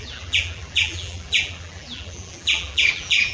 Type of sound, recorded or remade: remade